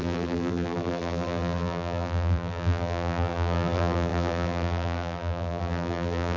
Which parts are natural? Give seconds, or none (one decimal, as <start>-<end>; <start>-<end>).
none